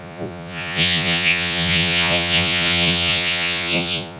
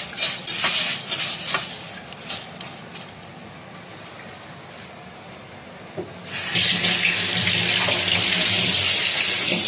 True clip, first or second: second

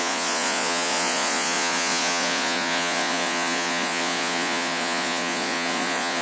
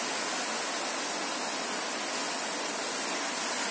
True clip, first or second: second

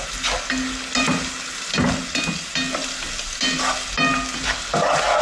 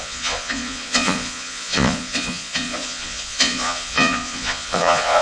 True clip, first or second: first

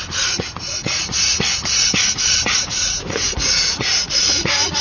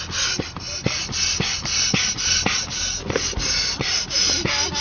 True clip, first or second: second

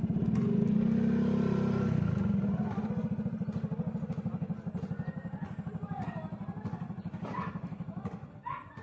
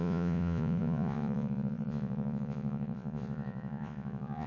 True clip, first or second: first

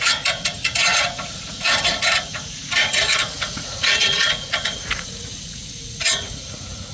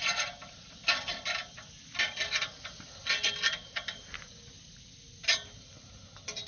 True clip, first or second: second